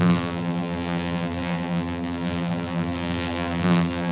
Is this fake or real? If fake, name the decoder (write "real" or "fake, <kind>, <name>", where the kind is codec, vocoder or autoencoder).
fake, vocoder, BigVGAN v2